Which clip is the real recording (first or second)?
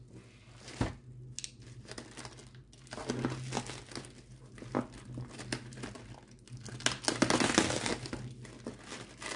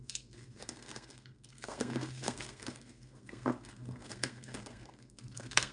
first